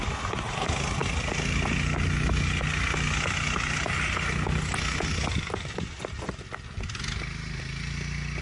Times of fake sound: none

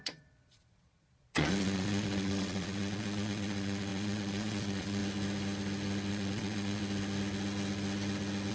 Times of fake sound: 0.0-5.0 (vocoder, Vocos); 6.1-6.8